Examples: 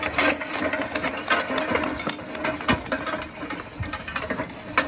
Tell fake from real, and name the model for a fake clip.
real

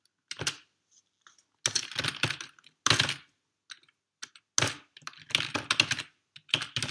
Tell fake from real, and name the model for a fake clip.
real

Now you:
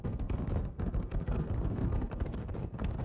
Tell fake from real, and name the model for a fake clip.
fake, codec, SNAC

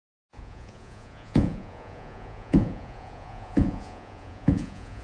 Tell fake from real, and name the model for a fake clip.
fake, vocoder, Vocos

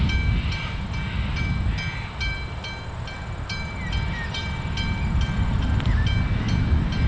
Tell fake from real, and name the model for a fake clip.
real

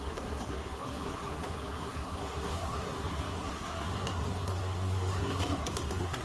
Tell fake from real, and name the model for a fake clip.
fake, codec, SNAC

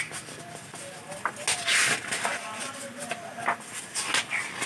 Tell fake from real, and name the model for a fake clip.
real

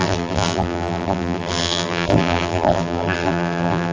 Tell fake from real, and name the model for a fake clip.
fake, vocoder, BigVGAN v2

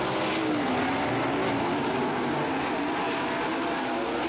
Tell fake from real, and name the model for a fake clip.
real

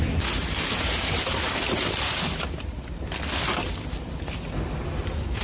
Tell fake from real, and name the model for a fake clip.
real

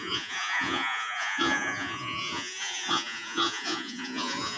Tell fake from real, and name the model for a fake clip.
fake, vocoder, Vocos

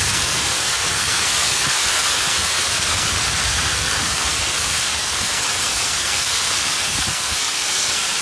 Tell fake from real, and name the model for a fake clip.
fake, codec, SNAC